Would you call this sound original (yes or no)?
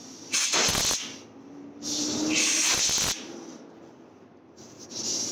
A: yes